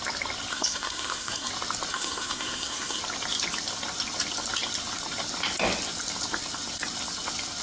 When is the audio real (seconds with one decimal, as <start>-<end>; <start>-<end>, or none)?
0.0-0.5; 1.5-1.9; 3.0-7.6